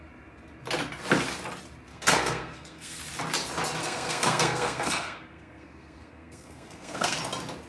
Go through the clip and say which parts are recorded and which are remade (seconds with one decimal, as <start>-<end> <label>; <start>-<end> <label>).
0.0-1.9 recorded; 1.9-3.0 remade; 3.0-3.8 recorded; 3.8-7.2 remade; 7.2-7.7 recorded